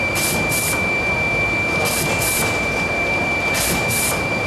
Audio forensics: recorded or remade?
remade